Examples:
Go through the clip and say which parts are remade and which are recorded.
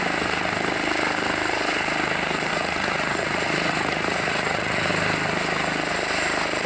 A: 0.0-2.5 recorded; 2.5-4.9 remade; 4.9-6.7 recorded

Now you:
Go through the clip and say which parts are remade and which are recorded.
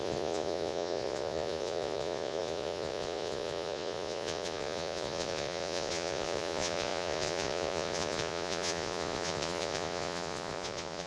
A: 0.0-11.1 remade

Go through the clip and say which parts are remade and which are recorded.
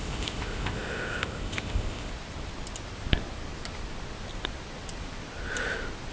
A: 0.0-2.1 remade; 2.1-6.1 recorded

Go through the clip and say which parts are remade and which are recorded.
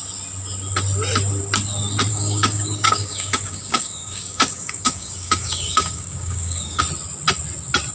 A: 0.0-2.1 recorded; 2.1-6.8 remade; 6.8-7.9 recorded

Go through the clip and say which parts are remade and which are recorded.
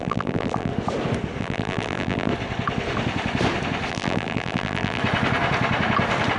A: 0.0-0.7 remade; 0.7-1.4 recorded; 1.4-2.3 remade; 2.3-3.9 recorded; 3.9-5.0 remade; 5.0-6.4 recorded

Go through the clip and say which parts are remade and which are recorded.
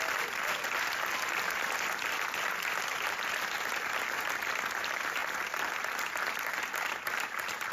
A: 0.0-7.7 recorded